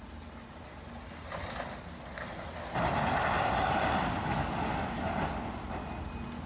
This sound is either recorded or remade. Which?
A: recorded